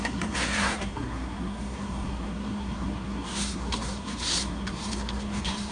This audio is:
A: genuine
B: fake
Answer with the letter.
B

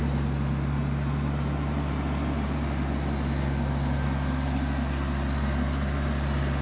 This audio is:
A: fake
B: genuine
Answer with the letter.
B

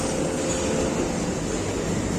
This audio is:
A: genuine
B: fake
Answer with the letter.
A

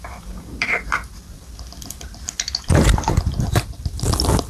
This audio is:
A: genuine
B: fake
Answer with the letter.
B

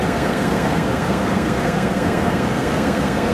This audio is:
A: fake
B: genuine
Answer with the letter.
A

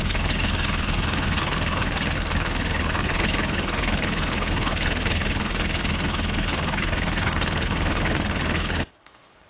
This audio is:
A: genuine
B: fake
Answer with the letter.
B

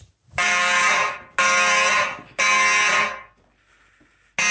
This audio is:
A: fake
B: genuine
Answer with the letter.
B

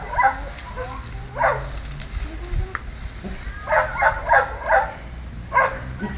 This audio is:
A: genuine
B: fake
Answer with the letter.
A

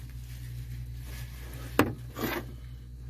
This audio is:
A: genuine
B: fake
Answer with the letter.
A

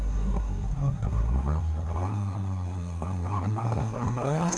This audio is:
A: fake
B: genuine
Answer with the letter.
A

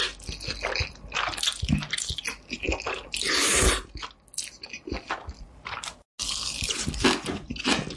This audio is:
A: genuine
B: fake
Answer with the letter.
A